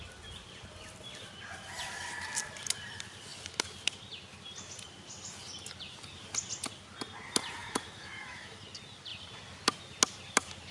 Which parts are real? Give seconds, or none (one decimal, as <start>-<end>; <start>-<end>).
0.0-7.6; 8.6-10.7